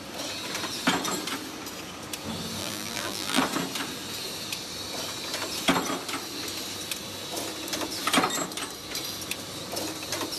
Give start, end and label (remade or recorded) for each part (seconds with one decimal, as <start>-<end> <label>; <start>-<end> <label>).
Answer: 0.0-2.6 recorded; 2.6-3.4 remade; 3.4-10.4 recorded